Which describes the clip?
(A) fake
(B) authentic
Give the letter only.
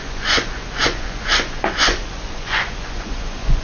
A